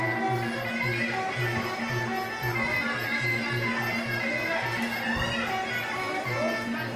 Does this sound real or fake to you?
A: real